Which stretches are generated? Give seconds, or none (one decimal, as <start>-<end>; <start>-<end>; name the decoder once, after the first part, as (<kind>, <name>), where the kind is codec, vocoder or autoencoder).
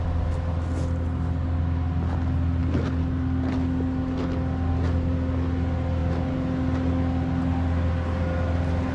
none